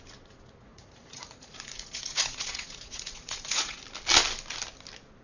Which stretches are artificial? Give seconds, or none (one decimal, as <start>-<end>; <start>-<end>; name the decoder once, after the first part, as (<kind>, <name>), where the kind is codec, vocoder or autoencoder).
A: 0.7-3.8 (vocoder, Vocos)